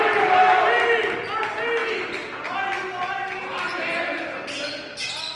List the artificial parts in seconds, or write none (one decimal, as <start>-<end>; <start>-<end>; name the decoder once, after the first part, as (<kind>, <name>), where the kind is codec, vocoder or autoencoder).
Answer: none